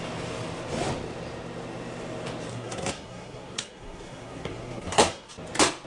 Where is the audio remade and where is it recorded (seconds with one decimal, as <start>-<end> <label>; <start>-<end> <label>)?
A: 0.0-2.5 recorded; 2.5-5.3 remade; 5.3-5.9 recorded